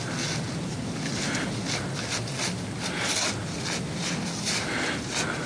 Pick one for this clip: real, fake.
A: real